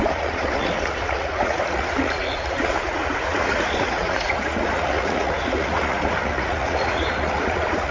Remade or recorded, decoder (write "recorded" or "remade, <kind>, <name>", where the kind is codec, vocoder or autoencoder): remade, vocoder, Vocos